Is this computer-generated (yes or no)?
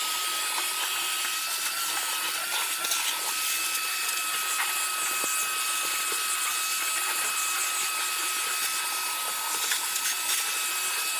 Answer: no